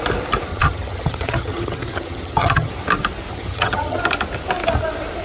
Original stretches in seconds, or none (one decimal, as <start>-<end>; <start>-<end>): 0.0-0.5; 2.7-3.3; 4.0-5.2